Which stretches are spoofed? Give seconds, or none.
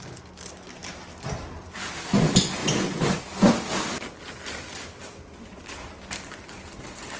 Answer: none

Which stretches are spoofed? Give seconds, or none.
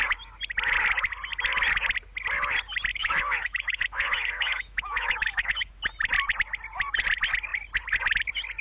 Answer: 2.9-5.7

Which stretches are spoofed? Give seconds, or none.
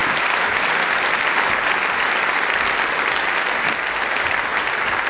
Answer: none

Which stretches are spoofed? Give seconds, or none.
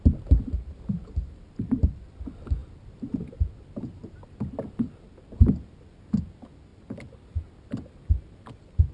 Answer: none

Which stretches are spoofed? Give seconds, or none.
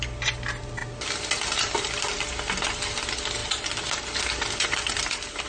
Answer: none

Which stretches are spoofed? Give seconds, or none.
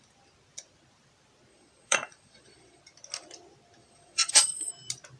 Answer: 1.5-2.8; 3.8-4.7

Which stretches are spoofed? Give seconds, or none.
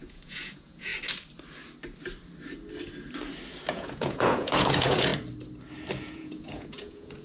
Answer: 0.0-0.9; 3.7-5.1; 6.0-7.2